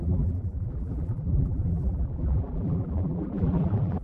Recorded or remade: remade